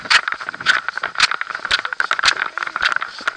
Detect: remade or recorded recorded